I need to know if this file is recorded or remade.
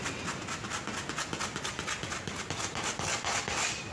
recorded